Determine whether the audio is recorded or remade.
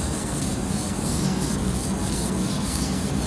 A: remade